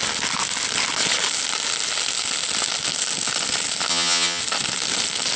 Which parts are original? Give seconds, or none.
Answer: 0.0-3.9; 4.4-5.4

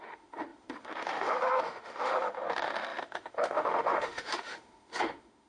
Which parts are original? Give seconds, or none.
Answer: none

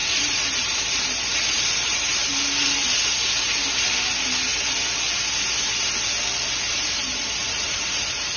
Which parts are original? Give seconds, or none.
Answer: 2.2-6.7